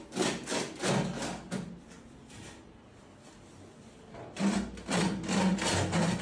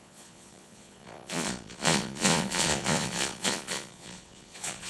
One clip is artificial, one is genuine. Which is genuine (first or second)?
first